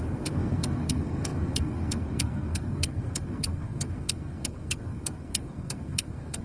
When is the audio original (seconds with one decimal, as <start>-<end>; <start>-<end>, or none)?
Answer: none